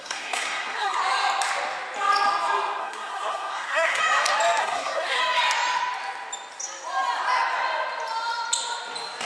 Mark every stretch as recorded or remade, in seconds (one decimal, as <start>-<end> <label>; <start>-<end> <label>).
0.0-1.0 remade; 1.0-2.8 recorded; 2.8-4.0 remade; 4.0-4.6 recorded; 4.6-5.2 remade; 5.2-9.2 recorded